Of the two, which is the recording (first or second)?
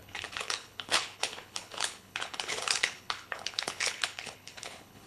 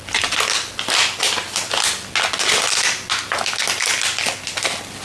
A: second